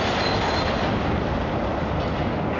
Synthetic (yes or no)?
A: no